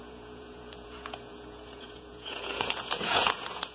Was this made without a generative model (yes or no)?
no